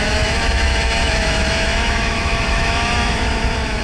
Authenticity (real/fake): fake